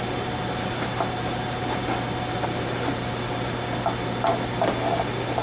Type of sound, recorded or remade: recorded